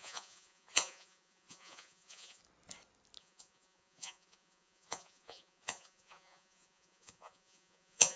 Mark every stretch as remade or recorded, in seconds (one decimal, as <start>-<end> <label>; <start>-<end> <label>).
0.0-2.4 remade; 2.4-3.2 recorded; 3.2-8.2 remade